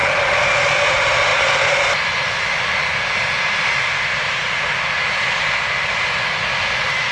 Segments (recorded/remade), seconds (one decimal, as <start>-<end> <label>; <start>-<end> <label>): 0.0-7.1 recorded